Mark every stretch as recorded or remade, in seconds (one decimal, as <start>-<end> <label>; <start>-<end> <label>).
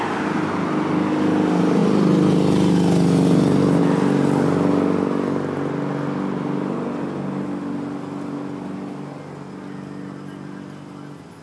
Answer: 0.0-11.4 recorded